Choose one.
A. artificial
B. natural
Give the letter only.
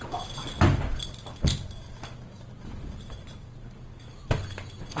B